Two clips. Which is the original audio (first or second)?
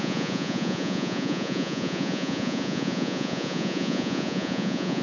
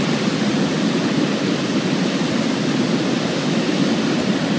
second